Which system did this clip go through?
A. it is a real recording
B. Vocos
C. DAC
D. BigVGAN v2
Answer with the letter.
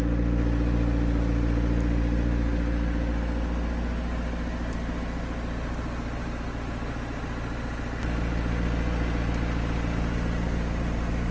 A